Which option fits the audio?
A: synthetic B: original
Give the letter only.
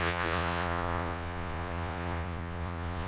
A